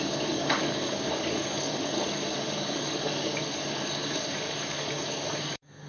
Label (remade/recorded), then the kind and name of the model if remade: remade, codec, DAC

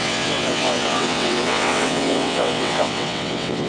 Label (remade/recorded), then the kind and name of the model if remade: remade, vocoder, WaveNeXt